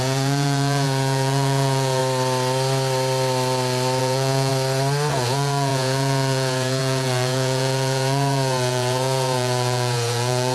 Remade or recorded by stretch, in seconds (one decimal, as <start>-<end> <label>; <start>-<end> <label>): 0.0-2.0 remade; 2.0-4.0 recorded; 4.0-4.5 remade; 4.5-5.1 recorded; 5.1-10.5 remade